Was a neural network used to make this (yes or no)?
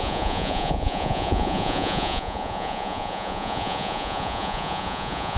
yes